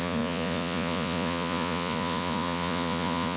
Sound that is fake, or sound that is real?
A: fake